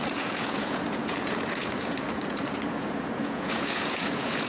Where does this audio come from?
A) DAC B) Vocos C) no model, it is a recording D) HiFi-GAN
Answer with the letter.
B